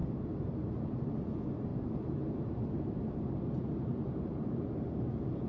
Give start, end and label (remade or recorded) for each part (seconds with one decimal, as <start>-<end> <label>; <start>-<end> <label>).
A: 0.0-1.1 remade; 1.1-1.7 recorded; 1.7-5.0 remade; 5.0-5.5 recorded